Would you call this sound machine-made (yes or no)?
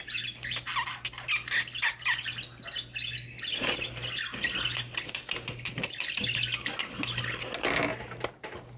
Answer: no